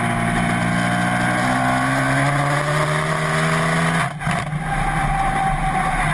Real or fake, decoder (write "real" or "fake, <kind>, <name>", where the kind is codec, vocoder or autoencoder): real